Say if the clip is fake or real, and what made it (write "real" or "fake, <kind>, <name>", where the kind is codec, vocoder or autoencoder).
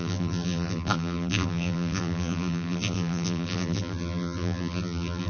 fake, vocoder, BigVGAN v2